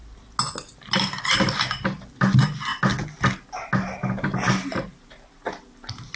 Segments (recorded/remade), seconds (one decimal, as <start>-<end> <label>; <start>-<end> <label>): 0.0-6.2 recorded